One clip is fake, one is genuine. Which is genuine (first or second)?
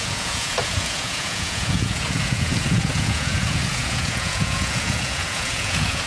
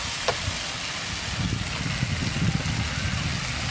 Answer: second